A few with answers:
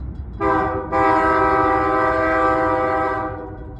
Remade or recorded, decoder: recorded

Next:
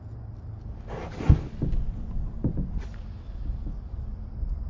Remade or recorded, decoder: recorded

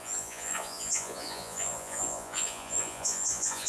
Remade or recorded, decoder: remade, vocoder, Vocos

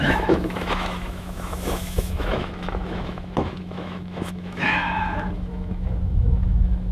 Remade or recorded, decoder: remade, autoencoder, DAC-VAE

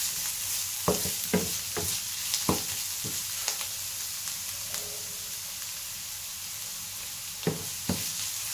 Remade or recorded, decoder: recorded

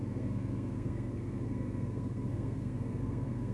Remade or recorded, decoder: remade, codec, SNAC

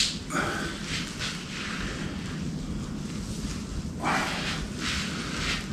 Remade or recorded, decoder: recorded